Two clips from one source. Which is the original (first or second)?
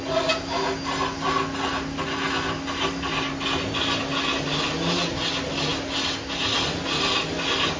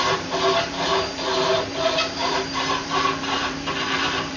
first